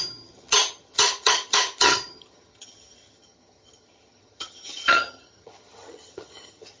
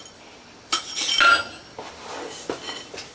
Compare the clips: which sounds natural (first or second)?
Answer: second